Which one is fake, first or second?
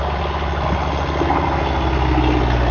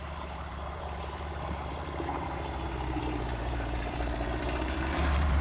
second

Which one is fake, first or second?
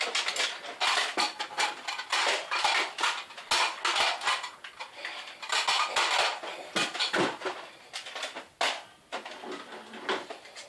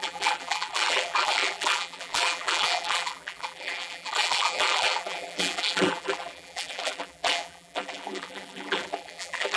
second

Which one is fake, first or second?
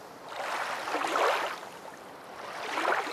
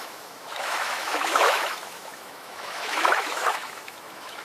second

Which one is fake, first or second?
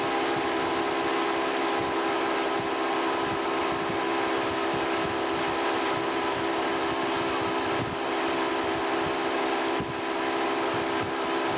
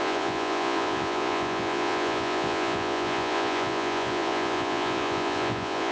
second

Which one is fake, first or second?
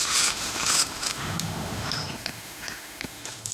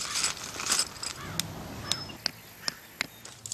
first